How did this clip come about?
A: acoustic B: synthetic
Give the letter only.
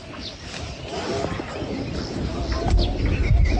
A